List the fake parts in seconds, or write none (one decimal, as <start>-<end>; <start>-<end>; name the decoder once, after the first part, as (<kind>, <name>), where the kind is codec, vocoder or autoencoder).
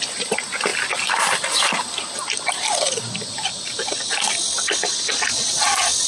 none